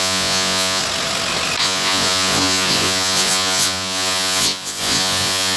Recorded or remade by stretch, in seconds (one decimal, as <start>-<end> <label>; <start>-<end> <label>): 0.0-0.8 remade; 0.8-1.6 recorded; 1.6-5.6 remade